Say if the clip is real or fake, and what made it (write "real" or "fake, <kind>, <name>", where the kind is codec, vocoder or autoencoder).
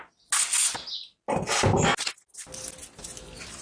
real